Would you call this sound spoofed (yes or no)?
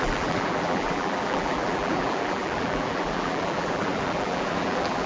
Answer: yes